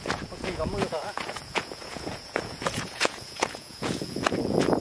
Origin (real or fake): fake